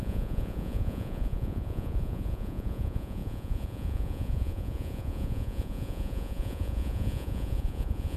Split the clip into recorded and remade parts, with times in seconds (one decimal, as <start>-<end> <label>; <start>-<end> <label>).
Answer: 0.0-8.2 remade